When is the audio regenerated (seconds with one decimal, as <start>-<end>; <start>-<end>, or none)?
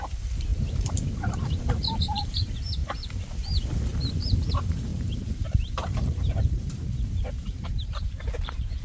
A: 0.0-2.8; 4.1-8.8